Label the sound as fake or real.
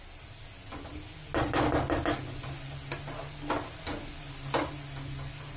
real